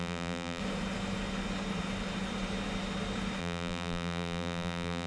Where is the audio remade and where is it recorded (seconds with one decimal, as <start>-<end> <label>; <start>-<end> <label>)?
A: 0.0-0.6 remade; 0.6-3.4 recorded; 3.4-5.1 remade